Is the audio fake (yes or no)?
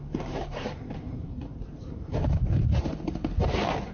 yes